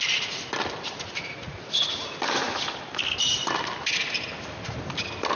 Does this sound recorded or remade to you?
recorded